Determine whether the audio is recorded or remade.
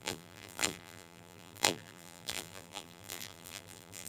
remade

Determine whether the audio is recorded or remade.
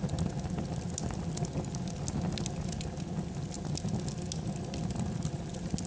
recorded